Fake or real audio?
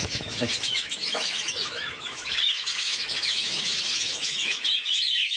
fake